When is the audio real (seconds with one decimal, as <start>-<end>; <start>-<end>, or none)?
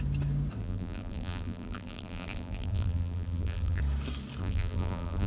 0.0-0.6; 3.8-4.4